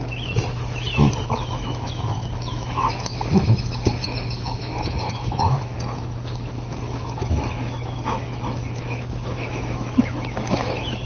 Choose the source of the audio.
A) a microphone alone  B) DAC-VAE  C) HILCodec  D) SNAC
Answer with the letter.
B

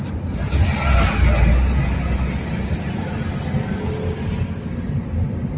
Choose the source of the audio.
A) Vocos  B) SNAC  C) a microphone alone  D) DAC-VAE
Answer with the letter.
C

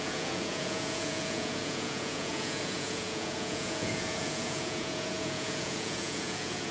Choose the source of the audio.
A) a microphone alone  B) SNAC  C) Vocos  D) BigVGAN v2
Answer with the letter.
C